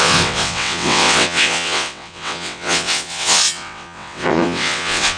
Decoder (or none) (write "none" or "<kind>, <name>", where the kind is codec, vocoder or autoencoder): vocoder, WaveNeXt